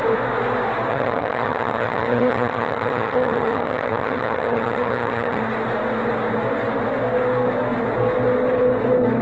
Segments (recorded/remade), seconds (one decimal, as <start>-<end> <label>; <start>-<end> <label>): 0.0-0.9 recorded; 0.9-5.4 remade; 5.4-9.2 recorded